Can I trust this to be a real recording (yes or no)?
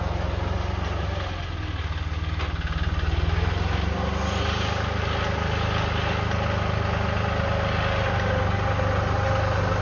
yes